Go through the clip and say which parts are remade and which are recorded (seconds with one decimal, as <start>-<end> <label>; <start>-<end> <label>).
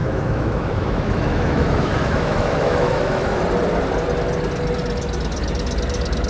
0.0-3.4 remade; 3.4-6.3 recorded